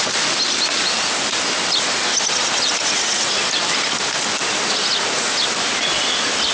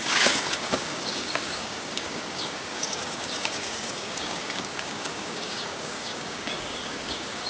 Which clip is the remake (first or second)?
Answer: second